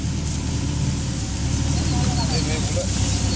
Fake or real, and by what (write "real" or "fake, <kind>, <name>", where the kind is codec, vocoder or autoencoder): real